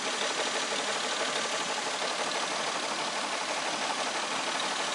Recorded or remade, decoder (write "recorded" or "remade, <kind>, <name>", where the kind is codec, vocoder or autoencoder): recorded